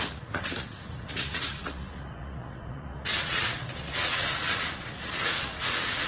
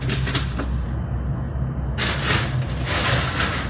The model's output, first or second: first